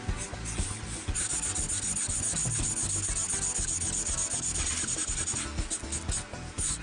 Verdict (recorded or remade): recorded